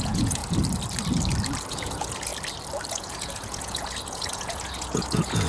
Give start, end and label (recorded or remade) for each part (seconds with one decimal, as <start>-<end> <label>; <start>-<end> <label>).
0.0-0.4 remade; 0.4-1.6 recorded; 1.6-2.3 remade; 2.3-2.9 recorded; 2.9-5.5 remade